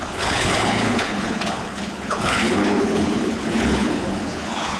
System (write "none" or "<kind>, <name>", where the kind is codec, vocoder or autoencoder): codec, HILCodec